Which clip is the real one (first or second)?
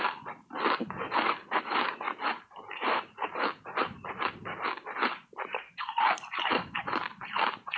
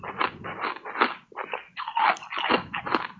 second